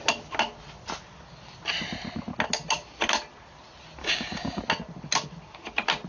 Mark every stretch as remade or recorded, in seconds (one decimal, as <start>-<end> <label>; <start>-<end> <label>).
0.0-4.0 recorded; 4.0-4.6 remade; 4.6-6.1 recorded